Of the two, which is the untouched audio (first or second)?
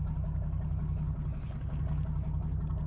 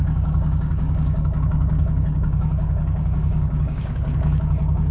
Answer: first